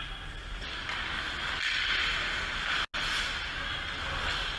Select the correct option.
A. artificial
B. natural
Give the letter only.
B